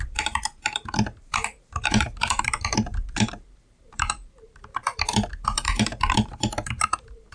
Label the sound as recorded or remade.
remade